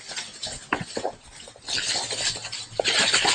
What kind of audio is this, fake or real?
real